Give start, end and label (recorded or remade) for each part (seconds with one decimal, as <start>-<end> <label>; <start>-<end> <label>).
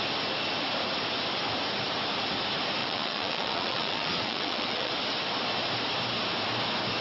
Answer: 0.0-2.8 recorded; 2.8-4.9 remade; 4.9-7.0 recorded